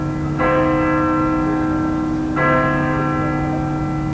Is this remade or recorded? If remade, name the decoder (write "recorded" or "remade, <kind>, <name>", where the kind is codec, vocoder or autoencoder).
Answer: recorded